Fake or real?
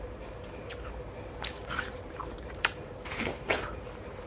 fake